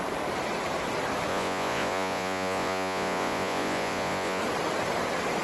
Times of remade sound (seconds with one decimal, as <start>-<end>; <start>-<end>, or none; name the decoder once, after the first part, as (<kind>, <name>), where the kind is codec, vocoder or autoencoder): 1.3-4.4 (vocoder, Vocos)